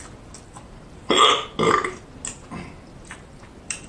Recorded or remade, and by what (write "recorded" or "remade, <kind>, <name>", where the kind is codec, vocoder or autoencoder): recorded